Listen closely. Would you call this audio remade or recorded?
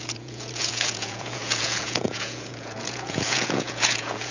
remade